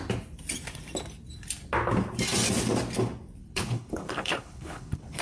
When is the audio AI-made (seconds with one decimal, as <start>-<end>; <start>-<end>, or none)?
3.4-5.2